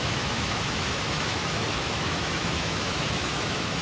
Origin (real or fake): fake